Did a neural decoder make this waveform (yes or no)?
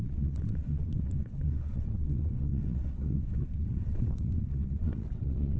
yes